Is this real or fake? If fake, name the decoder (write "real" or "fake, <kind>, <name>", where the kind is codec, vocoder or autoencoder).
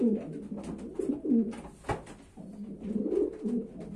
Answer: real